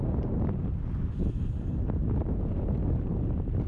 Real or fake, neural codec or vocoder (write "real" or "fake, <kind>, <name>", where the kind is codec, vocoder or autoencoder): real